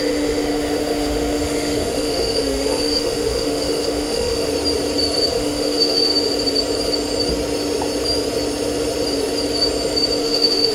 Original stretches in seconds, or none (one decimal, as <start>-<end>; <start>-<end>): 4.5-5.3; 6.1-10.2